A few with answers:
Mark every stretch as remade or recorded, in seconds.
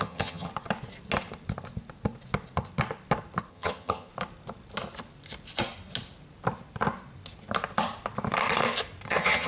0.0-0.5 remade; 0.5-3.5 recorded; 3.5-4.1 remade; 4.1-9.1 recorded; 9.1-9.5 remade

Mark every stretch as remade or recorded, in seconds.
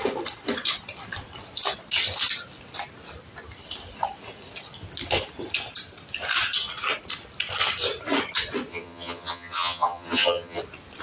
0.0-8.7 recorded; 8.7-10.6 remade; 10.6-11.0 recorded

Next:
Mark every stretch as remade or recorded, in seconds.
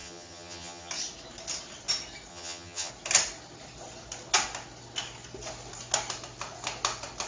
0.0-0.9 remade; 0.9-2.3 recorded; 2.3-2.9 remade; 2.9-7.3 recorded